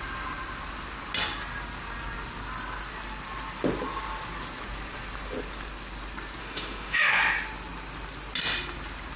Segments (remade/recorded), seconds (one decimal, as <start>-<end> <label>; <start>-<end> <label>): 0.0-6.4 recorded; 6.4-7.2 remade; 7.2-9.2 recorded